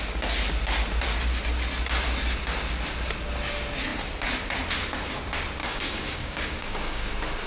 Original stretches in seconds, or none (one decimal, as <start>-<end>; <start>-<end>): 0.0-5.6; 7.1-7.5